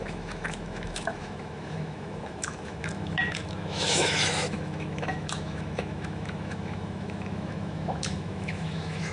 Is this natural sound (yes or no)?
no